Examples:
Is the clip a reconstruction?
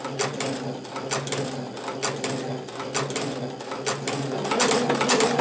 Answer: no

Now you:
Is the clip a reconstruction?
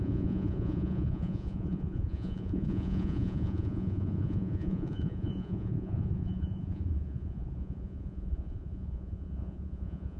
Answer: yes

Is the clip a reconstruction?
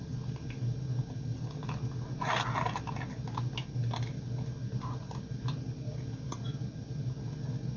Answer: no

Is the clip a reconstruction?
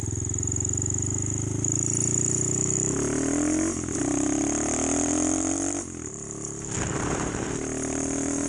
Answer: no